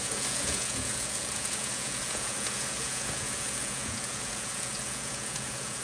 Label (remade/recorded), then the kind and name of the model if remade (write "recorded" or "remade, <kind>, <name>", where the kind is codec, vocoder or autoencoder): remade, vocoder, Vocos